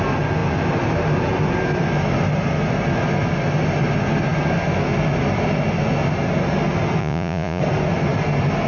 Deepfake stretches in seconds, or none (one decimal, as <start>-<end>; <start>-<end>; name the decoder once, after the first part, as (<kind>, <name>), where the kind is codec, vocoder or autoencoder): 7.0-7.6 (vocoder, Vocos)